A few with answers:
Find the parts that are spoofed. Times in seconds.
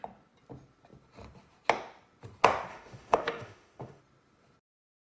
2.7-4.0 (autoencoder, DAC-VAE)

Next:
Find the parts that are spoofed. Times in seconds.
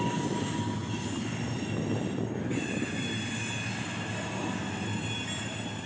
none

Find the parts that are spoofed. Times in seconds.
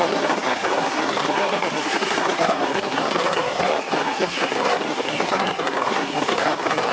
0.0-6.9 (codec, SNAC)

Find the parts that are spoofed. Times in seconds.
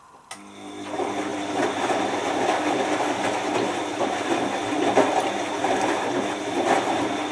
none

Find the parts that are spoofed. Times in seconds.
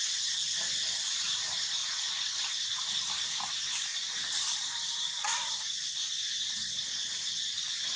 none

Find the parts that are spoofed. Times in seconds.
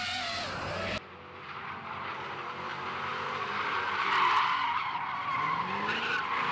none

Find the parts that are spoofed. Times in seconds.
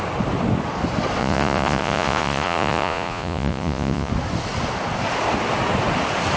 1.2-4.1 (vocoder, Vocos)